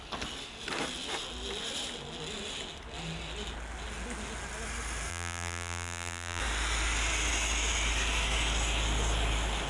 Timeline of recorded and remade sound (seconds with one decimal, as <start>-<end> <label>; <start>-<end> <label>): 0.0-5.1 recorded; 5.1-6.4 remade; 6.4-9.7 recorded